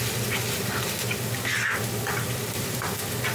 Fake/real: real